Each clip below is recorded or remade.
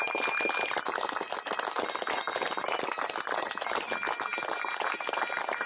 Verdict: recorded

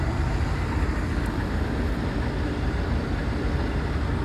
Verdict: recorded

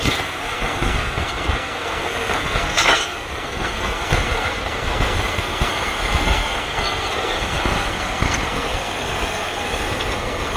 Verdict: remade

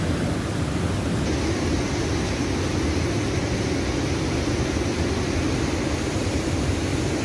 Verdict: recorded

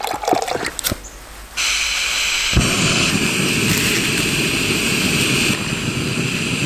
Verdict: recorded